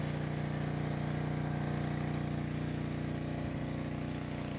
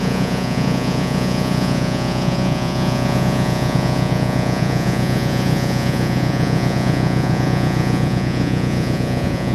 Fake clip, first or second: second